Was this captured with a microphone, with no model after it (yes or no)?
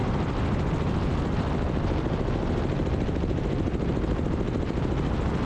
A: yes